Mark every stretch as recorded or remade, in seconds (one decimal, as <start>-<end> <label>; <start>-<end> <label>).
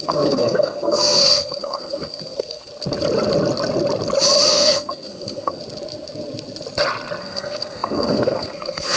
0.0-2.7 remade; 2.7-4.5 recorded; 4.5-5.6 remade; 5.6-7.2 recorded; 7.2-9.0 remade